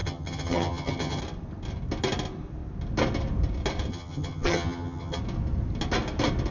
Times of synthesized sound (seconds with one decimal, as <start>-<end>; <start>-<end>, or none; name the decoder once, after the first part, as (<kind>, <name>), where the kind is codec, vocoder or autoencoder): 0.0-1.2 (vocoder, HiFi-GAN); 3.9-5.2